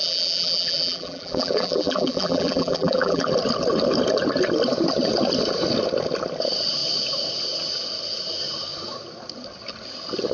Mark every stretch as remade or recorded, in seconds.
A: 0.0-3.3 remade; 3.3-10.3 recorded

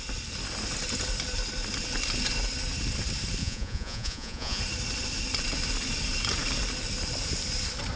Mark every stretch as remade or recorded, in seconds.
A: 0.0-3.4 recorded; 3.4-4.6 remade; 4.6-8.0 recorded

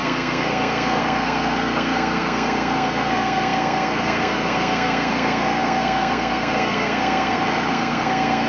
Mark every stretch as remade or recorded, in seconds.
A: 0.0-8.5 remade

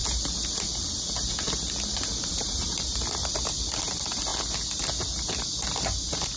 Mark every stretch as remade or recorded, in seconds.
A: 0.0-6.4 recorded

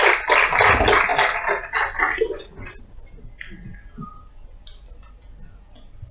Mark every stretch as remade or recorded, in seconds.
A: 0.0-6.1 recorded

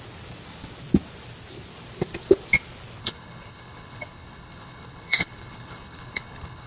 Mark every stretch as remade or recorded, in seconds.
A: 0.0-3.0 recorded; 3.0-6.7 remade

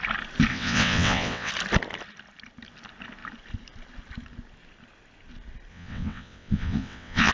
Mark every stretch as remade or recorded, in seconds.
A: 0.0-0.5 recorded; 0.5-1.5 remade; 1.5-5.7 recorded; 5.7-7.3 remade

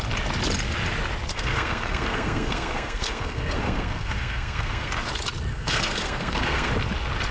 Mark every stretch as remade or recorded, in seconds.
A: 0.0-1.3 recorded; 1.3-4.9 remade; 4.9-5.5 recorded; 5.5-6.7 remade; 6.7-7.3 recorded